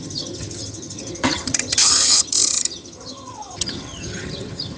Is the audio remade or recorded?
remade